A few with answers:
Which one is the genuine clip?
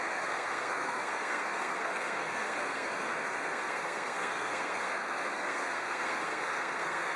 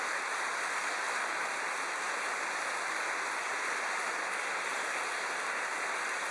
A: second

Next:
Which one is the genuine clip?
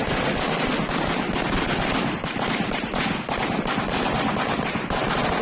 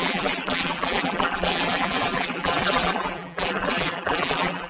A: first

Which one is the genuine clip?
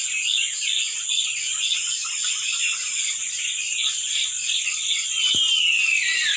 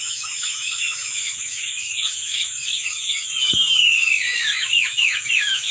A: first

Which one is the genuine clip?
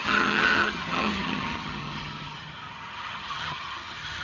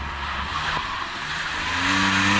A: second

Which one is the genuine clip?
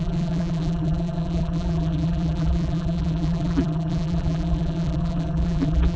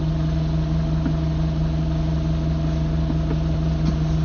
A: second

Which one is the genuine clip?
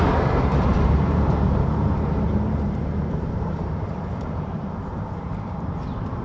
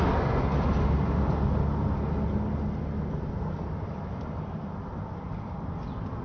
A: second